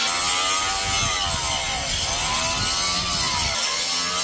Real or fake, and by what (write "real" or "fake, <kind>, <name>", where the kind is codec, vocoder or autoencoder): real